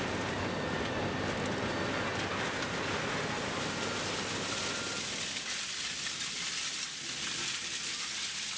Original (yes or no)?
yes